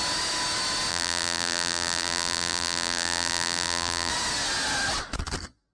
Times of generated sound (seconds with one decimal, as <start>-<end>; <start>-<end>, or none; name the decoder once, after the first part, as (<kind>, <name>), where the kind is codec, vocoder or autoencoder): 0.9-4.1 (vocoder, BigVGAN v2)

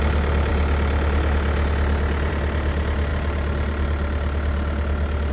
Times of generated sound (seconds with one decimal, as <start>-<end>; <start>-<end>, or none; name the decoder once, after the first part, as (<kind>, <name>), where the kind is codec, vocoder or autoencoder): none

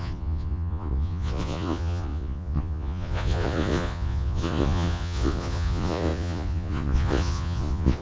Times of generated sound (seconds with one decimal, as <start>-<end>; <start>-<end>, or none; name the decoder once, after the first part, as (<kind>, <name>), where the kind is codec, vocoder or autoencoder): 0.0-8.0 (vocoder, Vocos)

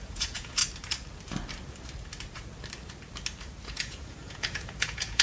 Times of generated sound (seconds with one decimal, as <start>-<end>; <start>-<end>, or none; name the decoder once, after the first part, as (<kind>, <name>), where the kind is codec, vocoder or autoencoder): 0.0-0.6 (vocoder, Vocos); 3.6-5.2